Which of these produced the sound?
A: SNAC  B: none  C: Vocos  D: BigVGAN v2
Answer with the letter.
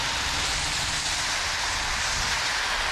B